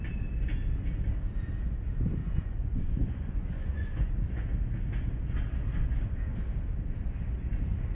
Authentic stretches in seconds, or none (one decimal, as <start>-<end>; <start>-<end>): 0.0-2.2; 4.1-7.9

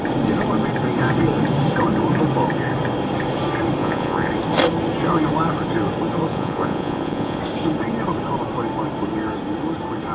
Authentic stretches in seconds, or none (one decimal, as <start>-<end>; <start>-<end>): 0.0-3.8; 4.3-6.3; 7.4-10.1

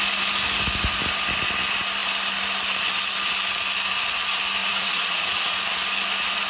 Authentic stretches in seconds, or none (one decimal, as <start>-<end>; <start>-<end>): 0.0-4.6; 5.8-6.5

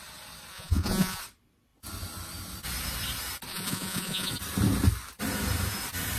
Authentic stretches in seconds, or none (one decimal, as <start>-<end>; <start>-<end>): 0.0-0.5; 1.2-3.5; 4.3-6.2

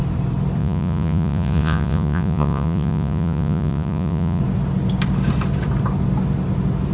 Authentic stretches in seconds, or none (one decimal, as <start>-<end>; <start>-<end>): 0.0-0.6; 4.4-6.9

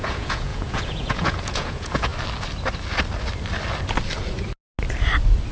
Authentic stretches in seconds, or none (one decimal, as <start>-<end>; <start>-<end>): 2.1-5.5

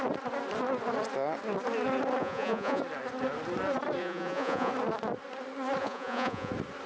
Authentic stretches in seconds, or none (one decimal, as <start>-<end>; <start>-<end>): 0.0-2.2; 2.8-4.0; 4.7-5.8; 6.5-6.9